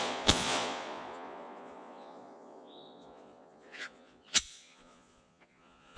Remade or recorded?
remade